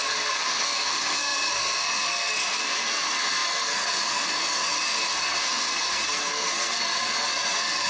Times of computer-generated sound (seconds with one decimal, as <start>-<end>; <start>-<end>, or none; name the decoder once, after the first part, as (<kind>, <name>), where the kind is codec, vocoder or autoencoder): 0.0-7.9 (codec, SNAC)